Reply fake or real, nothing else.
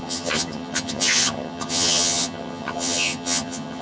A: fake